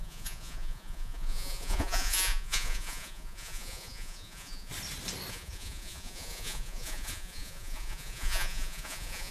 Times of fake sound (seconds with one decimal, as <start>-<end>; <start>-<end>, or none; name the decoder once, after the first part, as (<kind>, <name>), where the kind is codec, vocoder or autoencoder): 0.0-4.7 (vocoder, Vocos); 5.3-9.3